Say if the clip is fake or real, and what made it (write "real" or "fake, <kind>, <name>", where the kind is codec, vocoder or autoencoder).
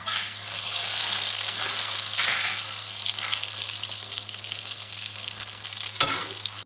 fake, codec, SNAC